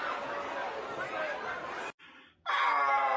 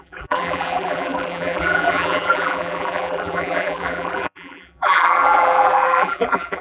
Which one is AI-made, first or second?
second